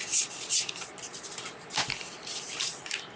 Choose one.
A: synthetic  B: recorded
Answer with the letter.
B